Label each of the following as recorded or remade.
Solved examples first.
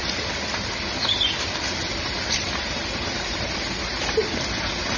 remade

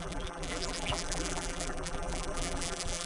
remade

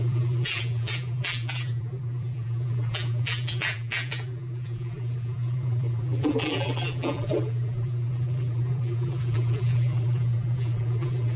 remade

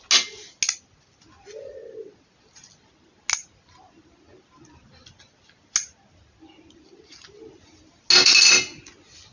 recorded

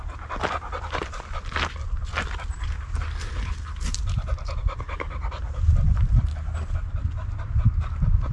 recorded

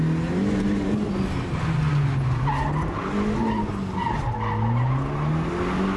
recorded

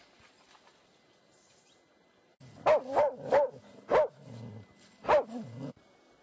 recorded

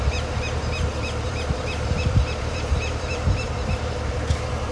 remade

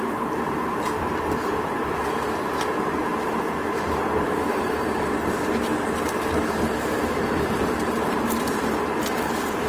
remade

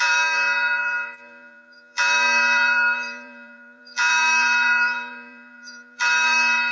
remade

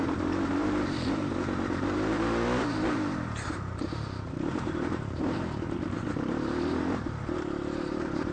remade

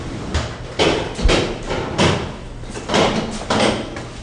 recorded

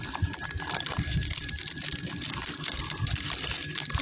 recorded